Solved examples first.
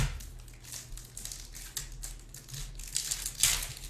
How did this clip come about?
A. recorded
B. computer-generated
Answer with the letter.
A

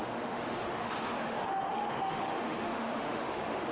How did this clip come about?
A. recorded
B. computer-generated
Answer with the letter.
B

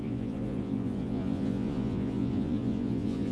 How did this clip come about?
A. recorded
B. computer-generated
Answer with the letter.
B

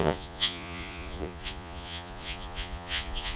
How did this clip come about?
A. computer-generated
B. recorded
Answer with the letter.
A